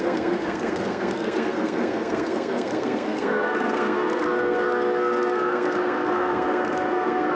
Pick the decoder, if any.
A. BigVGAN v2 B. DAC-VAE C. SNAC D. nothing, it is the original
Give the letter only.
C